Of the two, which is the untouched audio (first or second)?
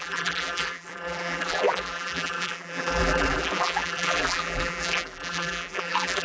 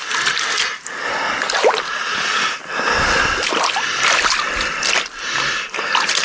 second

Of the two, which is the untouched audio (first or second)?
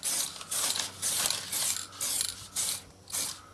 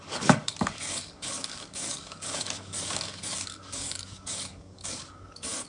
first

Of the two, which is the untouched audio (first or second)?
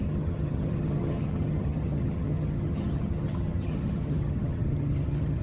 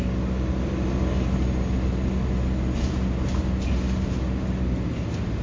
second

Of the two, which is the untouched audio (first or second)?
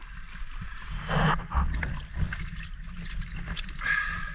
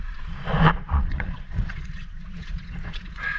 first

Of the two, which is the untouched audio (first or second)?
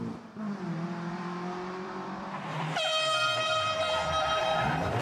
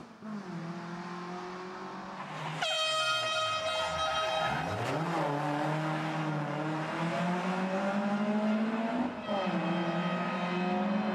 second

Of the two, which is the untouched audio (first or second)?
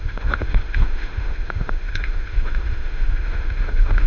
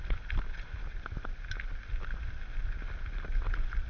second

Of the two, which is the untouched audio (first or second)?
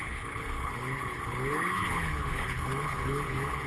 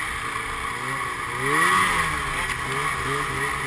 second